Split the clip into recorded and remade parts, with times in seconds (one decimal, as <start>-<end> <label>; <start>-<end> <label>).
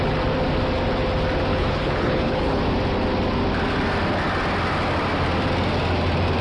0.0-1.5 recorded; 1.5-2.6 remade; 2.6-6.4 recorded